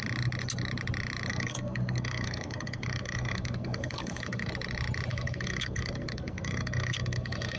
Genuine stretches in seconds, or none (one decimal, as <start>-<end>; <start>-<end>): 0.0-1.3; 4.5-5.1